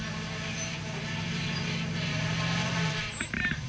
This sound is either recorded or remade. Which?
recorded